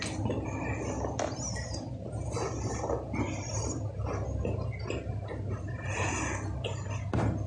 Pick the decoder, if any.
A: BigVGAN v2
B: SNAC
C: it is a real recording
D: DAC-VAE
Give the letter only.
C